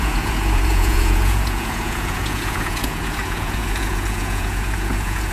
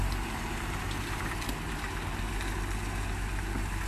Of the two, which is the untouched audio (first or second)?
second